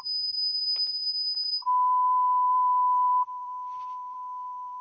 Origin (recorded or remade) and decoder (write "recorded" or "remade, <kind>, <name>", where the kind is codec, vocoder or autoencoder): remade, vocoder, BigVGAN v2